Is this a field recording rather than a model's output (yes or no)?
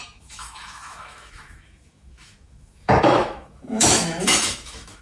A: no